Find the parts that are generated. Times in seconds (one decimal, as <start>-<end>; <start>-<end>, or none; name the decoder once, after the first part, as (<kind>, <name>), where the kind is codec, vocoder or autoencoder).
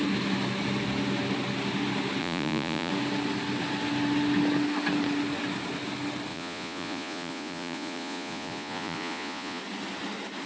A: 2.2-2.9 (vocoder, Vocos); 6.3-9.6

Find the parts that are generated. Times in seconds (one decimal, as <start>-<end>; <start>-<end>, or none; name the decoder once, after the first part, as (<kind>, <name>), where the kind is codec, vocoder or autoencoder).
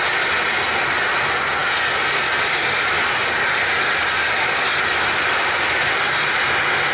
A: none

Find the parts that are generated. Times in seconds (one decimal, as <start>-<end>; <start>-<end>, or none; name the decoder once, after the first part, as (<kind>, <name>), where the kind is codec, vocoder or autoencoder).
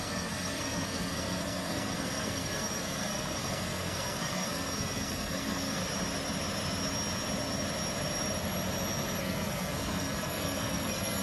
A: 0.0-5.8 (codec, SNAC); 9.2-11.2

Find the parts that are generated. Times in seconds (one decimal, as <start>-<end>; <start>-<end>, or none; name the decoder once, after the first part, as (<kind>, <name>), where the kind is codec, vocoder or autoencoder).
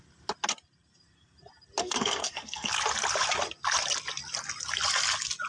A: 1.8-2.7 (codec, SNAC)